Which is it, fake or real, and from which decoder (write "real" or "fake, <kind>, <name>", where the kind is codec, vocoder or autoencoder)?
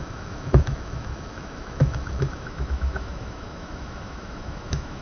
fake, autoencoder, DAC-VAE